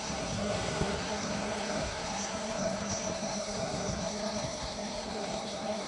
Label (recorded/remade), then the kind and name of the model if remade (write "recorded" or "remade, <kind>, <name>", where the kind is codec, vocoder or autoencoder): remade, codec, SNAC